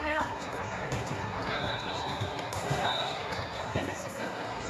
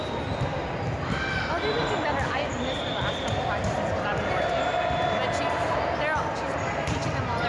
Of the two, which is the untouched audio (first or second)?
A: second